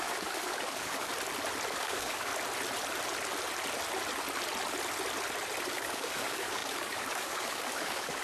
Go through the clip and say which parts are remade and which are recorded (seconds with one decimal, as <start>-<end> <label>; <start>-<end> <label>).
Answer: 0.0-1.1 remade; 1.1-1.8 recorded; 1.8-2.3 remade; 2.3-5.7 recorded; 5.7-8.2 remade